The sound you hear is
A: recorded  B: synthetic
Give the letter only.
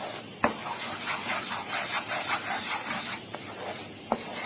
A